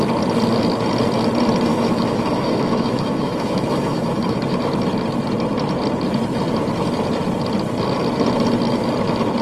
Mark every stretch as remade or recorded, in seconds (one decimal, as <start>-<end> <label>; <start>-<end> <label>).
0.0-1.7 recorded; 1.7-4.5 remade; 4.5-9.4 recorded